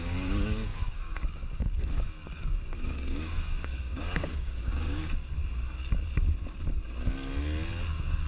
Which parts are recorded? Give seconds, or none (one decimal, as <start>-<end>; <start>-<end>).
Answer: 5.4-7.9